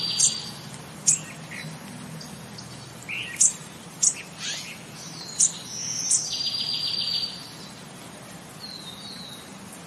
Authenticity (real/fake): real